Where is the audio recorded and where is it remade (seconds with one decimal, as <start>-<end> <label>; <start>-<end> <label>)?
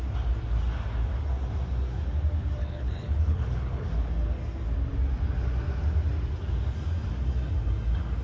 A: 0.0-2.6 recorded; 2.6-3.9 remade; 3.9-8.2 recorded